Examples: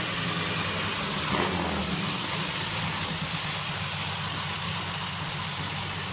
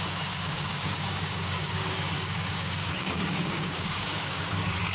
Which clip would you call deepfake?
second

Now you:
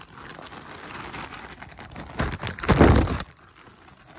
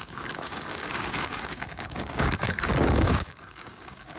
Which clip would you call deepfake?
second